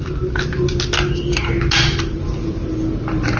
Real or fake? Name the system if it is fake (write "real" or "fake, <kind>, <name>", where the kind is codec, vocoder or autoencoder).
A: real